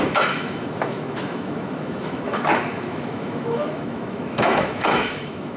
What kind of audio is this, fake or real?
fake